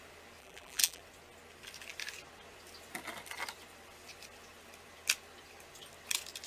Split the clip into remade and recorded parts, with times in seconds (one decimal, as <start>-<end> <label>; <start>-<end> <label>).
0.0-0.4 recorded; 0.4-1.0 remade; 1.0-6.5 recorded